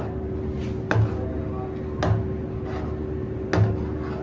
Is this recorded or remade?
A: recorded